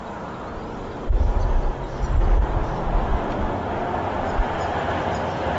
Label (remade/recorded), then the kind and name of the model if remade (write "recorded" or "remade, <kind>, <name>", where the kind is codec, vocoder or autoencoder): recorded